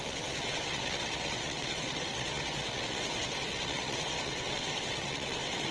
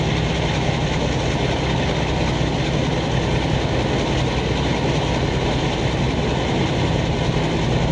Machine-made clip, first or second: first